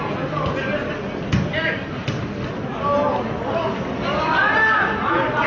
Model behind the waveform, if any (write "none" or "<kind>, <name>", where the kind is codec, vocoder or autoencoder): none